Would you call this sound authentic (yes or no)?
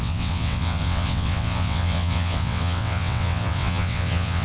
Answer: no